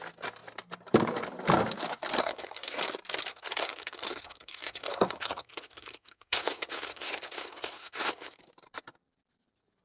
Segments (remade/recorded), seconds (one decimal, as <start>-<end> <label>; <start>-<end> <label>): 0.0-2.2 recorded; 2.2-2.8 remade; 2.8-3.3 recorded; 3.3-8.4 remade; 8.4-9.8 recorded